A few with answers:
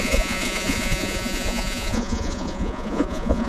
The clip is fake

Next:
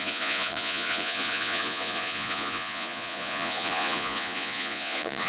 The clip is fake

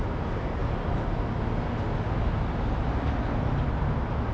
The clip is real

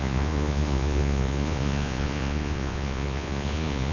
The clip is fake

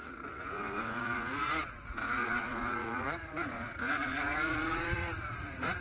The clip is fake